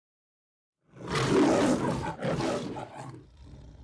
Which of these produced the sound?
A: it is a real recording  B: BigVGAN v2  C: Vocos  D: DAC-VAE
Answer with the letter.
A